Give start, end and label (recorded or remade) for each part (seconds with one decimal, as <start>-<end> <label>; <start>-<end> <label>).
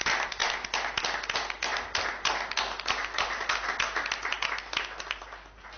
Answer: 0.0-5.8 recorded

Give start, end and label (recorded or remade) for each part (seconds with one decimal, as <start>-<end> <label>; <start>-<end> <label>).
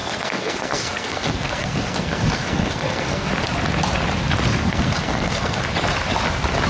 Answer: 0.0-3.3 remade; 3.3-4.6 recorded; 4.6-5.6 remade; 5.6-6.7 recorded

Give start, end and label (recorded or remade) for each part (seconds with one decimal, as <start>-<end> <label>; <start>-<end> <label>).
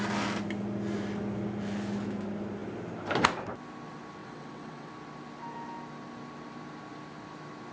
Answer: 0.0-4.2 recorded; 4.2-4.9 remade; 4.9-7.7 recorded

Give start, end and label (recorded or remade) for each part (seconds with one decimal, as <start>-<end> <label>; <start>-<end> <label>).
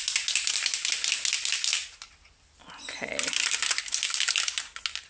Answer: 0.0-5.1 recorded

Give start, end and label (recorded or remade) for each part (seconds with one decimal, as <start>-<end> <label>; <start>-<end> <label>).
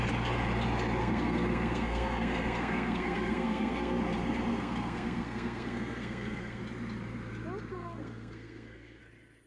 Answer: 0.0-1.0 recorded; 1.0-4.0 remade; 4.0-4.5 recorded; 4.5-6.6 remade; 6.6-7.7 recorded; 7.7-9.0 remade; 9.0-9.5 recorded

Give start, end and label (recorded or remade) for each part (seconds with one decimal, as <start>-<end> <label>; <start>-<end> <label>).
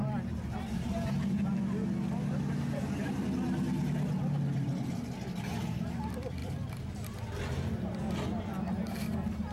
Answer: 0.0-1.1 remade; 1.1-9.5 recorded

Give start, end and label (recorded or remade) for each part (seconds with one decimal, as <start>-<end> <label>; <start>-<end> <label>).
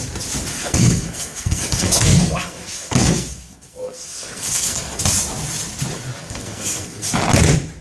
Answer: 0.0-0.5 recorded; 0.5-5.0 remade; 5.0-6.2 recorded; 6.2-7.1 remade; 7.1-7.8 recorded